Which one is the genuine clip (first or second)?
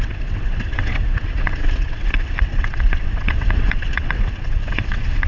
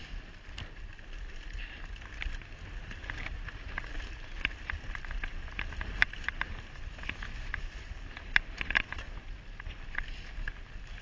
second